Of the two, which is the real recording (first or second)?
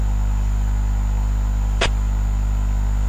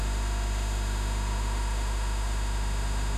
first